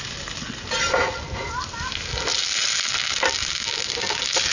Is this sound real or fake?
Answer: real